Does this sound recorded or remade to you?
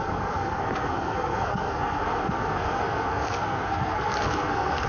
remade